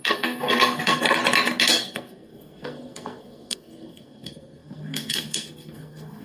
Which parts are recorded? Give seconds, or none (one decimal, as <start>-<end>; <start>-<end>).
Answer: 1.2-1.7